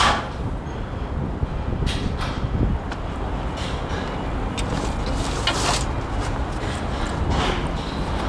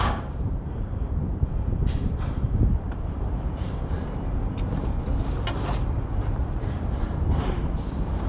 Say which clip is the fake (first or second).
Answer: second